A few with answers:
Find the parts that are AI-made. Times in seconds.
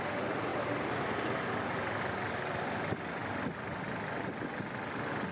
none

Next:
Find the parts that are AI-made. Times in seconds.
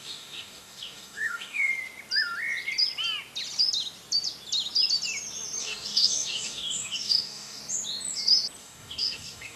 0.0-1.7 (codec, DAC); 5.6-7.6; 8.6-9.6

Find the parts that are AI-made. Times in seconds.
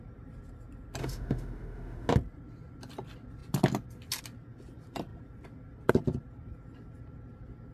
1.0-2.1 (autoencoder, DAC-VAE)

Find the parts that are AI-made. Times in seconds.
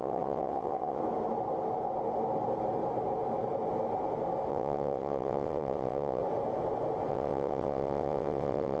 0.0-1.0 (vocoder, WaveNeXt); 4.5-6.2; 7.1-8.8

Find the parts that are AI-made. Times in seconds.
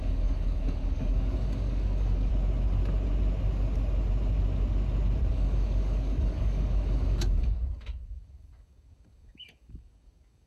0.0-2.3 (codec, DAC); 5.3-10.5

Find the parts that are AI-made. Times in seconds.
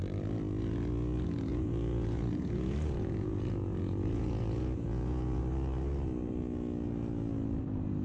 1.5-5.4 (vocoder, Vocos)